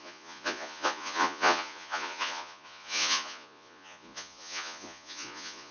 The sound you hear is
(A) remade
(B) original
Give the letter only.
A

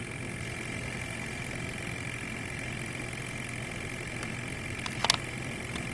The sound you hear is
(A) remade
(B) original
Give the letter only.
B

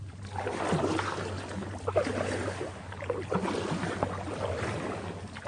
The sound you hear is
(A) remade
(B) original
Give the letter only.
B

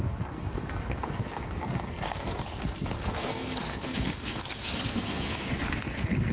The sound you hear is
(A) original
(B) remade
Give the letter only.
B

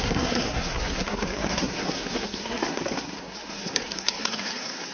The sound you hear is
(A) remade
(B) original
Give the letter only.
A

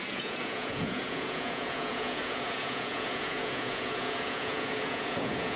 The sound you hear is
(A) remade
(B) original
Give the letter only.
A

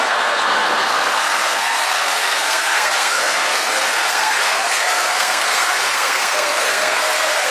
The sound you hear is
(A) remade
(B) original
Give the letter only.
A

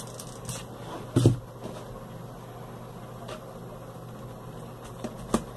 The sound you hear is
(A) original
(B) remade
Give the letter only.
A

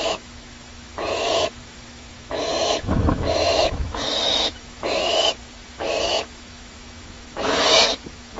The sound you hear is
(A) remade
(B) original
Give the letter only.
A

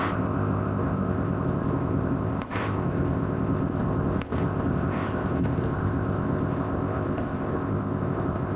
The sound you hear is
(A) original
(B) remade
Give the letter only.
B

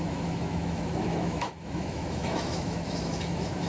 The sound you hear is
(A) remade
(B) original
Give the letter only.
A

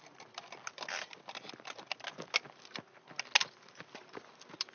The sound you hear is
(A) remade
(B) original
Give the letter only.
B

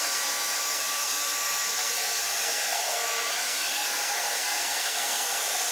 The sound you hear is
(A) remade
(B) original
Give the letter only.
A